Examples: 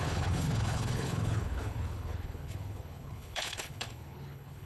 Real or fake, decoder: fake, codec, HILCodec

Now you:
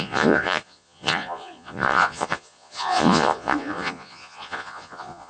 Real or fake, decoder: fake, vocoder, Vocos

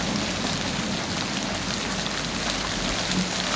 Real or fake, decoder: real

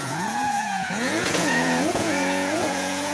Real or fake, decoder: fake, vocoder, Vocos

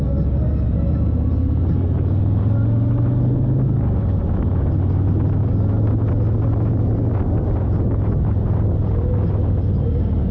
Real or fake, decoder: real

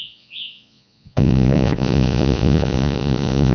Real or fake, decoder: fake, vocoder, Vocos